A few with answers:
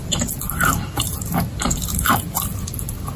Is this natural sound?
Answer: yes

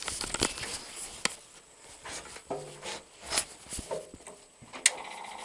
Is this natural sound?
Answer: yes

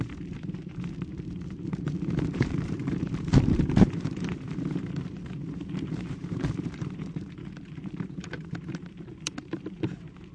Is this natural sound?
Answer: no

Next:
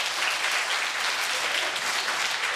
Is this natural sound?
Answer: yes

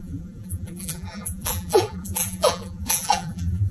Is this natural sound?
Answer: no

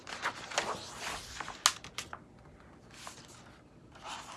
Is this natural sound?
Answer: yes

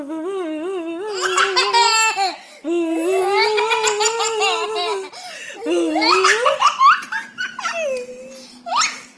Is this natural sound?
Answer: yes